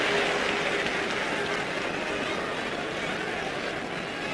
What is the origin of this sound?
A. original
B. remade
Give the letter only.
A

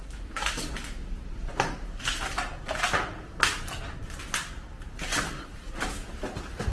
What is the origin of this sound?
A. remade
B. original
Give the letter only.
B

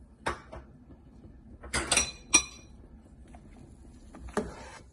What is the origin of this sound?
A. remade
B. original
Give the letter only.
B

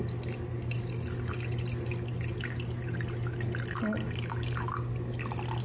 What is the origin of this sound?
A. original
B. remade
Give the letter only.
A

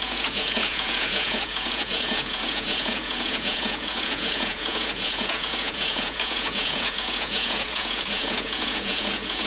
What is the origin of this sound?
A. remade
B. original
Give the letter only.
A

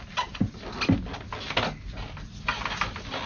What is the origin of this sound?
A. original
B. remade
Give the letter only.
A